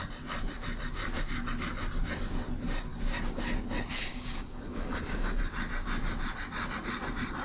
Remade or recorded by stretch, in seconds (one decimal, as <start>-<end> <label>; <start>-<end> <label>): 0.0-4.1 recorded; 4.1-5.4 remade; 5.4-7.4 recorded